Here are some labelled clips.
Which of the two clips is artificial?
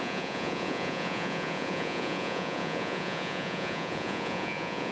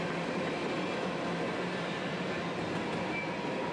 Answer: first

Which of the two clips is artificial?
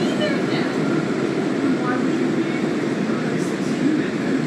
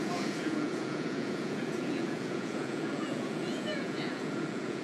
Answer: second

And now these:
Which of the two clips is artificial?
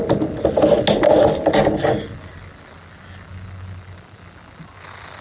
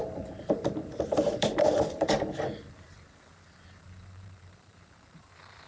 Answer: second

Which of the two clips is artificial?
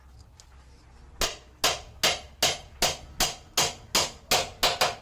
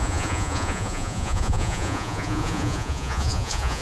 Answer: second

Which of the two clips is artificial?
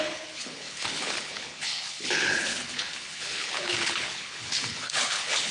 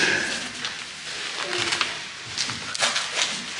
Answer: first